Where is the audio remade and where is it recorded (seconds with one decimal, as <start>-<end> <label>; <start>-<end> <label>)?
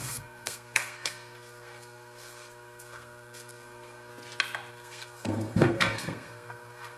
0.0-4.1 remade; 4.1-4.7 recorded; 4.7-7.0 remade